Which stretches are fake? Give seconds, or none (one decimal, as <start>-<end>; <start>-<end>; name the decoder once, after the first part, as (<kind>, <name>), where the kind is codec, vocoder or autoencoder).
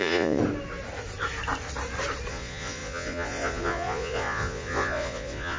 0.0-0.4 (vocoder, Vocos); 2.3-5.6